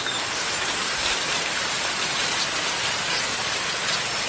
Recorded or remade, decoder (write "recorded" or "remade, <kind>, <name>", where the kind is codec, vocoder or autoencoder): recorded